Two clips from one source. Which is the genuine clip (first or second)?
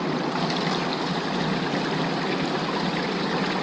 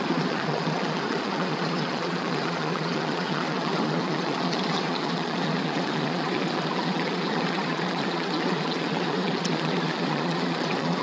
first